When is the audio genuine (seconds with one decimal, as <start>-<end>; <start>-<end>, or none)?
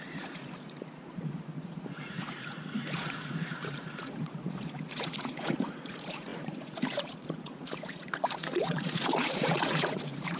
none